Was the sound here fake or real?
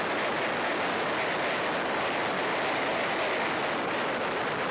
real